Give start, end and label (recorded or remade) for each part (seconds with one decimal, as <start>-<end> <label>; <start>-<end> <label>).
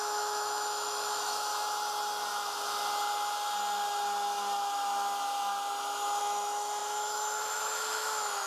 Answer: 0.0-1.5 remade; 1.5-6.2 recorded; 6.2-8.5 remade